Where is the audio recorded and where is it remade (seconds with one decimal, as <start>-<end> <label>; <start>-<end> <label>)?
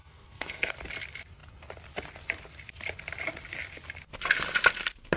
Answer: 0.0-0.7 remade; 0.7-5.2 recorded